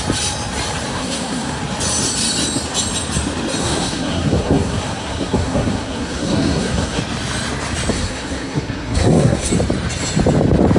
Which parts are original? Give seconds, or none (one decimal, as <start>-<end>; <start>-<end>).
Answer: 0.0-0.9; 1.6-3.6; 7.0-7.9; 9.5-10.8